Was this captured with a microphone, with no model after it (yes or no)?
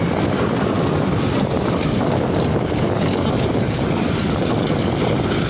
yes